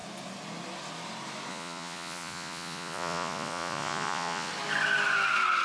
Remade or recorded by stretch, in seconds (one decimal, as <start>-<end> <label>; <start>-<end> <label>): 0.0-1.5 recorded; 1.5-4.5 remade; 4.5-5.6 recorded